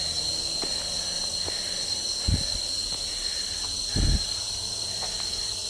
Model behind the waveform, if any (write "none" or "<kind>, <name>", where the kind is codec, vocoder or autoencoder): none